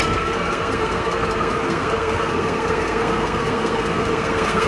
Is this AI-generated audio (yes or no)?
yes